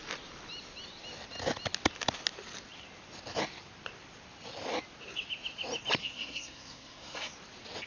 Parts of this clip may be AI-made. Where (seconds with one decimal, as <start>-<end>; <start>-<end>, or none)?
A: 6.0-7.3